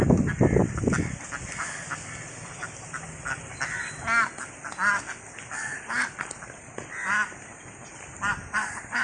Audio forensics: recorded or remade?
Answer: recorded